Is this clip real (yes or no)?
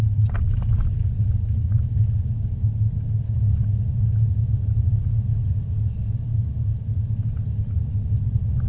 yes